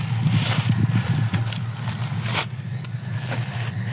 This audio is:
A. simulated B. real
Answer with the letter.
B